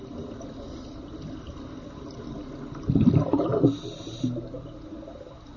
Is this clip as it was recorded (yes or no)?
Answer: yes